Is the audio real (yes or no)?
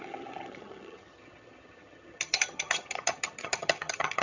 no